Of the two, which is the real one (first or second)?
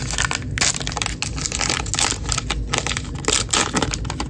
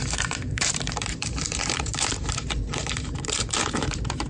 first